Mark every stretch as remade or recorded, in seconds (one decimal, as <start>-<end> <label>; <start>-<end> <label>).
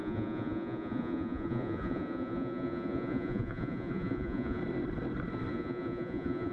0.0-4.6 remade; 4.6-5.5 recorded; 5.5-6.5 remade